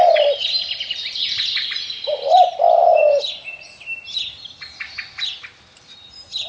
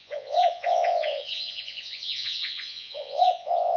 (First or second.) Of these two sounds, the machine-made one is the second